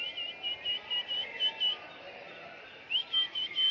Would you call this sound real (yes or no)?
yes